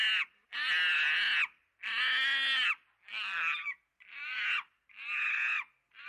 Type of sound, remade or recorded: recorded